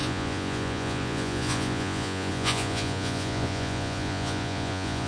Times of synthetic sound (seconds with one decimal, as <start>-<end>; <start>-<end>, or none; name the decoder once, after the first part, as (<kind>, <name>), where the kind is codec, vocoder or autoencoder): 0.0-5.1 (vocoder, Vocos)